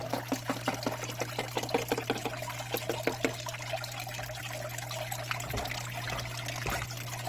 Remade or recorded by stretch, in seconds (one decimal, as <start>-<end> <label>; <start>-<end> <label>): 0.0-7.3 recorded